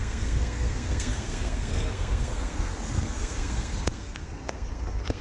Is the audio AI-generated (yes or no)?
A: yes